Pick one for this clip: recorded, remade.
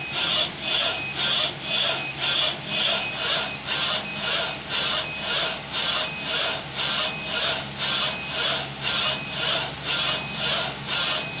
recorded